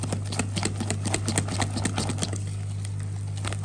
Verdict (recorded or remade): recorded